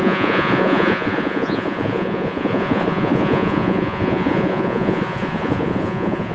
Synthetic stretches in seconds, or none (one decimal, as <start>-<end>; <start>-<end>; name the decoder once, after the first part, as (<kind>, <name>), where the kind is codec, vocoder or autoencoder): 0.0-6.3 (vocoder, Vocos)